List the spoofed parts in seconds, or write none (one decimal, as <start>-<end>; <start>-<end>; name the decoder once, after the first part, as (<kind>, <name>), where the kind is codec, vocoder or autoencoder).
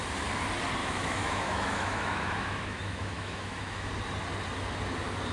0.8-3.9 (autoencoder, DAC-VAE)